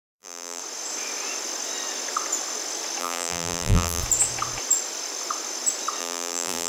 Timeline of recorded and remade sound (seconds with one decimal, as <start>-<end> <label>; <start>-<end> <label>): 0.0-0.6 remade; 0.6-3.0 recorded; 3.0-4.0 remade; 4.0-6.0 recorded; 6.0-6.7 remade